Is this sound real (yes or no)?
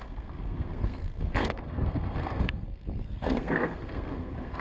no